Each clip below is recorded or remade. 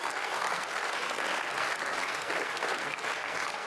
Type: remade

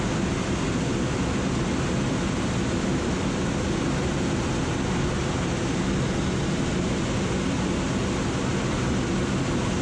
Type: recorded